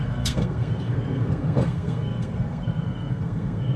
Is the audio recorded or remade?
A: remade